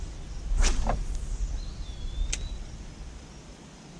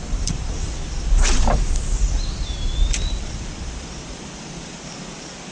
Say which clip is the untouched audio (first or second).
first